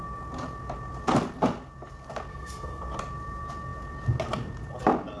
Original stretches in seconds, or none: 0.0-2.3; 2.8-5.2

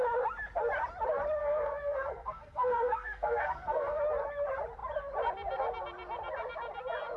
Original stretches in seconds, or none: 0.0-1.4; 4.0-7.2

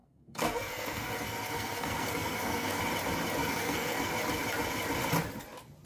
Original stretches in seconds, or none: 2.8-3.4; 4.1-5.9